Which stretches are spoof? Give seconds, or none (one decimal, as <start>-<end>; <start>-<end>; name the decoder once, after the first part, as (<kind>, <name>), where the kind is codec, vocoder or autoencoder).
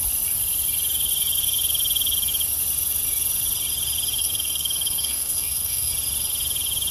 4.2-5.9 (codec, SNAC)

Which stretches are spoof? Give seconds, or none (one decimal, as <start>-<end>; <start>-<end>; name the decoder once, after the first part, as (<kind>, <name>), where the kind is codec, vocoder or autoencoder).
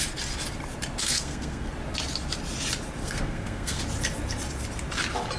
1.0-1.7 (codec, SNAC); 3.0-3.8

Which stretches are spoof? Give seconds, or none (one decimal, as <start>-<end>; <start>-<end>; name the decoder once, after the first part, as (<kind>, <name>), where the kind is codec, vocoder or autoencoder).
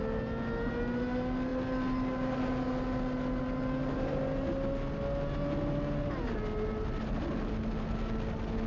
none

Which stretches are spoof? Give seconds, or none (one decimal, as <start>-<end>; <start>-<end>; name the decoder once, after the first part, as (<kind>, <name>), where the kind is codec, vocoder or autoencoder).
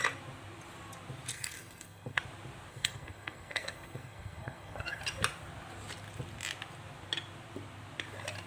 1.3-2.2 (codec, SNAC); 2.7-5.0